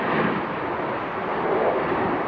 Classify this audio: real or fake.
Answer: real